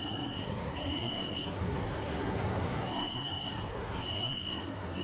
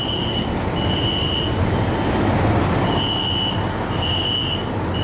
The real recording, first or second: second